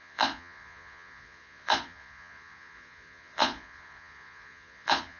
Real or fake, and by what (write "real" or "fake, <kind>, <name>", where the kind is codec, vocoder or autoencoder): fake, vocoder, Vocos